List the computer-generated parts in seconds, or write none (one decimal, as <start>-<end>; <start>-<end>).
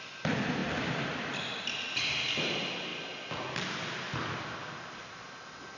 none